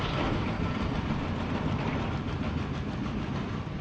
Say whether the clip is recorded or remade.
remade